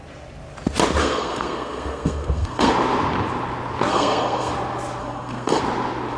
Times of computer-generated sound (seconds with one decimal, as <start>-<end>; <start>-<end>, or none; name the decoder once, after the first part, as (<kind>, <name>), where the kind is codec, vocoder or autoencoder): 1.0-2.7 (codec, SNAC); 3.9-4.5; 5.0-5.6